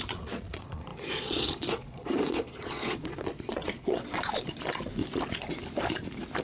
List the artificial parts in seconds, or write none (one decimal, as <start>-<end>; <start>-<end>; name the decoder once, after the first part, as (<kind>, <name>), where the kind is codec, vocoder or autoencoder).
0.0-5.0 (vocoder, Vocos)